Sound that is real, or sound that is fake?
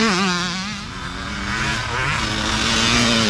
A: real